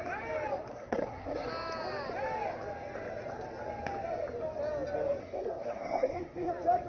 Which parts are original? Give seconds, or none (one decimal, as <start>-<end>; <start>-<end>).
0.0-0.7; 1.5-5.2; 6.5-6.9